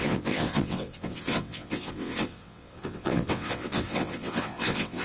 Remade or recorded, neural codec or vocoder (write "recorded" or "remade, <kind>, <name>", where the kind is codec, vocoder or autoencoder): remade, vocoder, WaveNeXt